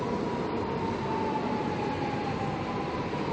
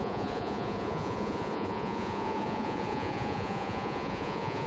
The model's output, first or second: second